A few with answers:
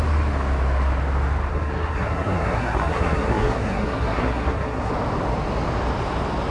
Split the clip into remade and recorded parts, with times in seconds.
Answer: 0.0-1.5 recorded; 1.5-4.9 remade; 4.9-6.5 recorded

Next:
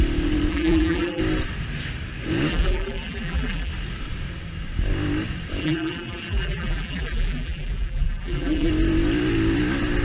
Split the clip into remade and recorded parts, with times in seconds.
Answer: 0.0-0.5 recorded; 0.5-1.2 remade; 1.2-2.5 recorded; 2.5-3.7 remade; 3.7-5.6 recorded; 5.6-8.7 remade; 8.7-10.0 recorded

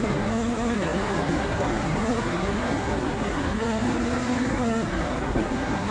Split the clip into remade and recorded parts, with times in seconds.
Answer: 0.0-5.9 remade

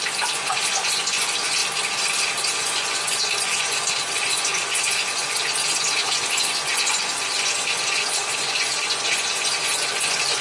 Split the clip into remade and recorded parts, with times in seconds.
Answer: 0.0-1.6 remade; 1.6-2.6 recorded; 2.6-10.4 remade

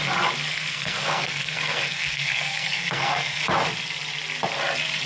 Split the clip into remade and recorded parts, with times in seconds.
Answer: 0.0-0.5 recorded; 0.5-3.4 remade; 3.4-5.1 recorded